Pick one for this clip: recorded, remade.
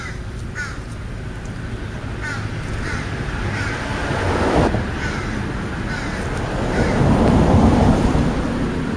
recorded